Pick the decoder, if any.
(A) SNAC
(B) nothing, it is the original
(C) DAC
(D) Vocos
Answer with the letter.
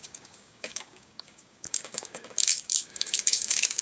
C